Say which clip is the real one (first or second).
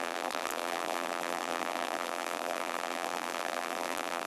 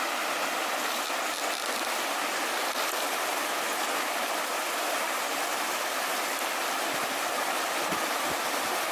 second